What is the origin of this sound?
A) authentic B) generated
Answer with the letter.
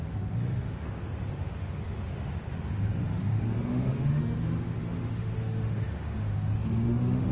B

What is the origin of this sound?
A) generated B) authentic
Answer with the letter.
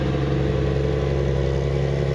B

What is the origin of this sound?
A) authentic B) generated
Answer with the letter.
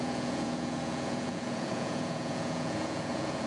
B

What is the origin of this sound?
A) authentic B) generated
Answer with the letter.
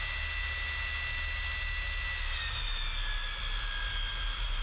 A